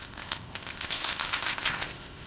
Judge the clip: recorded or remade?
remade